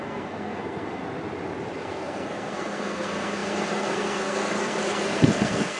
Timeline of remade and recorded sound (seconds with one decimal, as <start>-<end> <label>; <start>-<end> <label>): 0.0-1.0 remade; 1.0-1.8 recorded; 1.8-5.8 remade